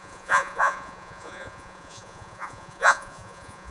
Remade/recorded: remade